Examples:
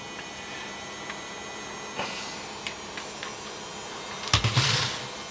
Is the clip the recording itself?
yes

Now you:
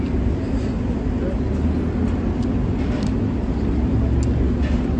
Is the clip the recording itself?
yes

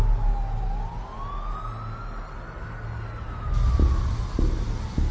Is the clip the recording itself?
yes